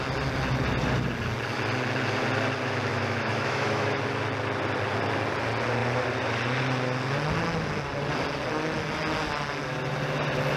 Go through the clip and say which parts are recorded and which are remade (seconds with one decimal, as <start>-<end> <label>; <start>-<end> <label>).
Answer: 0.0-2.9 recorded; 2.9-4.0 remade; 4.0-10.6 recorded